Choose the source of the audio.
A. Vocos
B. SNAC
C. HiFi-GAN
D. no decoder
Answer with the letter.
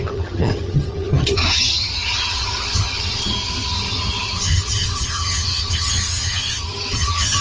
C